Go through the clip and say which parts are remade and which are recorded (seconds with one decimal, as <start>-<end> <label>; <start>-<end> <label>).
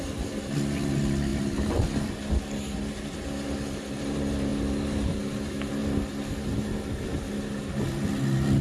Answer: 0.0-8.6 recorded